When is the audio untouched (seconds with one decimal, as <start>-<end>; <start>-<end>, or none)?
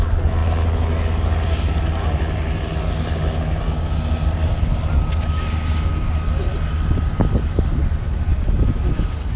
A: 0.0-9.4